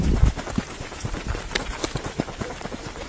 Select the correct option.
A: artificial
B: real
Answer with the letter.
B